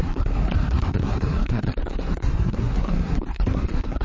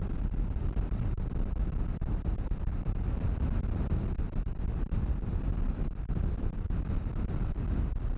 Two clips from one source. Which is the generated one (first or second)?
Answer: first